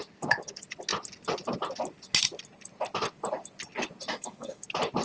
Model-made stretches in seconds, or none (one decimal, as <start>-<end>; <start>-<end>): 4.1-4.6